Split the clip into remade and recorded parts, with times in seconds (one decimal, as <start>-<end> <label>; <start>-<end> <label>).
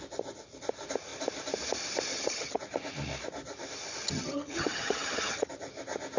0.0-2.1 recorded; 2.1-2.6 remade; 2.6-4.0 recorded; 4.0-5.5 remade; 5.5-6.2 recorded